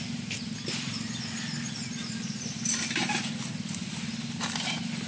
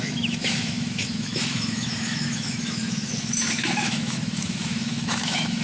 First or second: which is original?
first